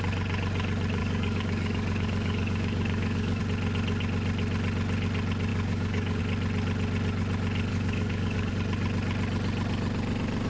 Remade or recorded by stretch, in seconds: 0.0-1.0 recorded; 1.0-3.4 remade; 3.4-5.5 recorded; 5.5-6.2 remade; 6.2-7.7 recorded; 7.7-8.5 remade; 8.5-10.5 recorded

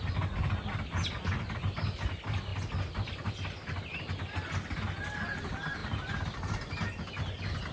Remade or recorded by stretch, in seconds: 0.0-7.7 recorded

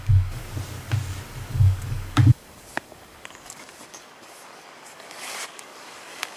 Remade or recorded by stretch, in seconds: 0.0-0.4 remade; 0.4-1.5 recorded; 1.5-6.4 remade